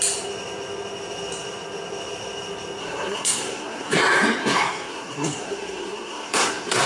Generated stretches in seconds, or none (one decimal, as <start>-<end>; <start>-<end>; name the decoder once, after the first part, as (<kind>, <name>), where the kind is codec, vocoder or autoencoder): 2.8-4.0 (codec, SNAC); 4.4-6.9